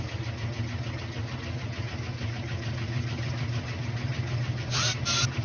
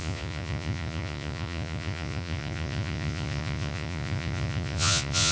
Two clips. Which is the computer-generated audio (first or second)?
second